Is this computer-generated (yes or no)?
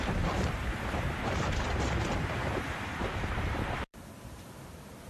yes